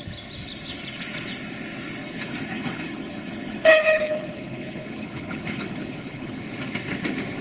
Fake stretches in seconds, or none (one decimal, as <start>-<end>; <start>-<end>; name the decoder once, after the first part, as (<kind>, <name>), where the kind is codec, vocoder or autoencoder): 2.0-6.4 (codec, HILCodec)